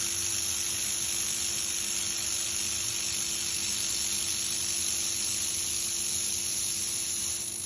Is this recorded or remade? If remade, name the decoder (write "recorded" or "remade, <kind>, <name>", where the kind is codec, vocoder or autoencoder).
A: recorded